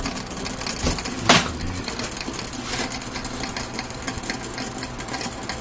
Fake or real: real